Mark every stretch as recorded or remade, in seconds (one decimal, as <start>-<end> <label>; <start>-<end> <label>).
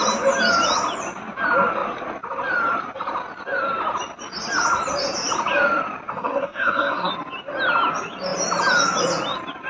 0.0-6.1 recorded; 6.1-7.1 remade; 7.1-9.7 recorded